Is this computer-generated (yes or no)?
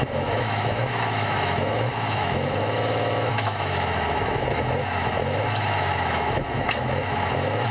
yes